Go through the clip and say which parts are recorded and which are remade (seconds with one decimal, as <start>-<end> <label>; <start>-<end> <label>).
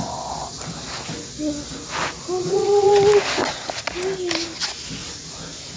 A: 0.0-2.4 recorded; 2.4-2.9 remade; 2.9-3.4 recorded; 3.4-3.9 remade; 3.9-5.0 recorded; 5.0-5.8 remade